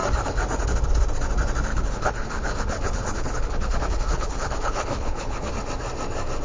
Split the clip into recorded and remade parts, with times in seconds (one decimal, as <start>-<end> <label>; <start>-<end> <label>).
0.0-1.7 recorded; 1.7-5.5 remade; 5.5-6.4 recorded